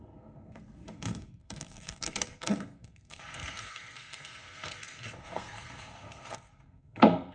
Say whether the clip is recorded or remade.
remade